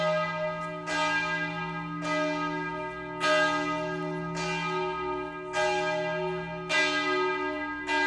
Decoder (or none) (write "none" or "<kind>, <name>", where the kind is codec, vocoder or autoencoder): none